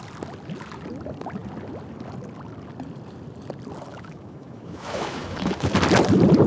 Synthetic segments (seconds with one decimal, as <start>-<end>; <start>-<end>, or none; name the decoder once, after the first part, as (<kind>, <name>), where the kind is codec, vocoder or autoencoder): 3.9-5.7 (autoencoder, DAC-VAE)